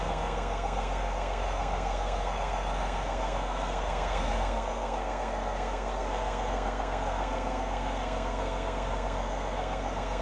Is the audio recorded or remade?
remade